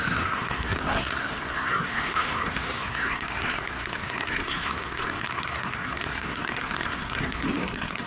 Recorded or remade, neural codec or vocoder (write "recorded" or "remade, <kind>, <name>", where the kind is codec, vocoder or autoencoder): remade, codec, SNAC